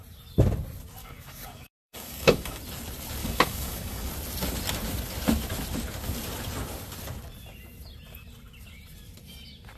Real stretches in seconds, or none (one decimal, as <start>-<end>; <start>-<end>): 0.0-1.0; 2.6-3.2; 4.1-9.8